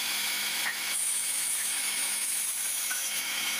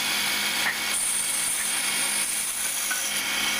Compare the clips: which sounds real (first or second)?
second